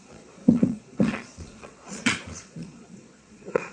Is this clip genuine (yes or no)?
no